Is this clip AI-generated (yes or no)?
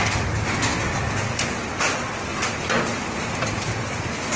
no